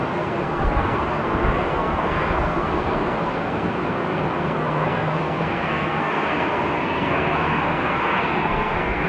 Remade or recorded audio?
remade